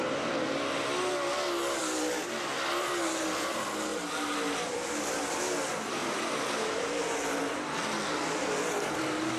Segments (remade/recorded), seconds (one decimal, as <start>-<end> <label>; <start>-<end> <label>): 0.0-3.9 recorded; 3.9-5.4 remade; 5.4-6.0 recorded; 6.0-6.9 remade; 6.9-9.4 recorded